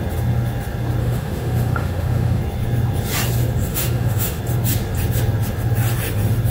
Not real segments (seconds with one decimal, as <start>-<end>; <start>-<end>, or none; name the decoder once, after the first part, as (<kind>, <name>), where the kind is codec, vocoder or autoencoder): 1.0-2.4 (autoencoder, DAC-VAE); 3.7-4.4